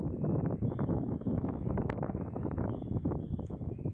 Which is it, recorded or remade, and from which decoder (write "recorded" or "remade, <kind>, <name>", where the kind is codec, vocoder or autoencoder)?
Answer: remade, autoencoder, DAC-VAE